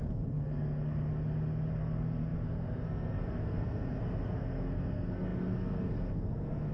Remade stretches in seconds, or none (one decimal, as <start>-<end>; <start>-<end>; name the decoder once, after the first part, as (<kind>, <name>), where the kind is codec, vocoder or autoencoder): 0.0-1.1 (codec, SNAC); 1.7-6.7